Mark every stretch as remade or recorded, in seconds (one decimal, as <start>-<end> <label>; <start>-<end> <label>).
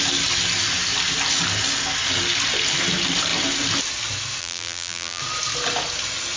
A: 0.0-4.4 recorded; 4.4-5.2 remade; 5.2-6.4 recorded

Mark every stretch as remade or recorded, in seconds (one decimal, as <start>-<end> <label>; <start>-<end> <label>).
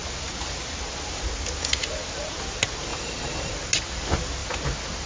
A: 0.0-2.9 recorded; 2.9-3.5 remade; 3.5-5.1 recorded